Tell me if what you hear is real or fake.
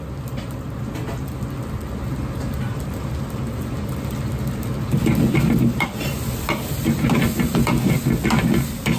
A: real